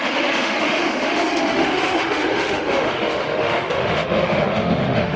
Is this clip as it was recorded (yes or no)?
no